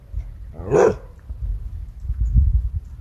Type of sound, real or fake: real